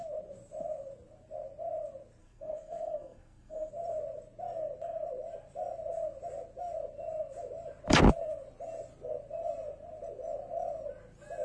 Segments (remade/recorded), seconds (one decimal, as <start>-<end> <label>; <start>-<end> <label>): 0.0-2.2 recorded; 2.2-3.7 remade; 3.7-11.4 recorded